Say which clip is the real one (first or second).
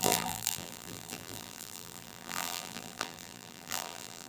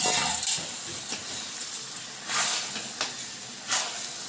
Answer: second